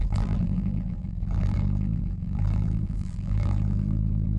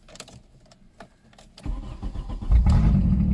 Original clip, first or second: second